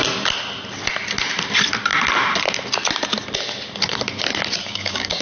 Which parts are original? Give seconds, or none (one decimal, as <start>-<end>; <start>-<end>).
0.0-4.6